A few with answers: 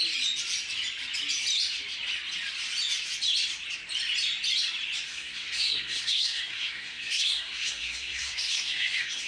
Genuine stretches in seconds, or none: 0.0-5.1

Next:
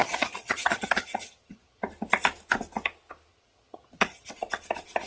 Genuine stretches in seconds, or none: 1.8-3.3; 4.3-5.1

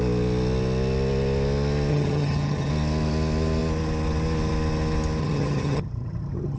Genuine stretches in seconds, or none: 0.0-1.9; 2.7-5.2